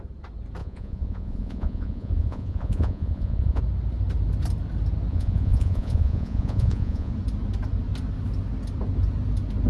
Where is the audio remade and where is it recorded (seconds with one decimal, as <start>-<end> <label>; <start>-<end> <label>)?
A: 0.0-0.6 recorded; 0.6-3.6 remade; 3.6-5.1 recorded; 5.1-7.1 remade; 7.1-9.7 recorded